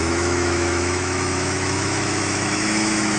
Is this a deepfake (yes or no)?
yes